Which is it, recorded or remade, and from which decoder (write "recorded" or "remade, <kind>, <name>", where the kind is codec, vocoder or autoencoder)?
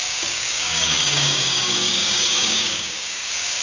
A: remade, codec, DAC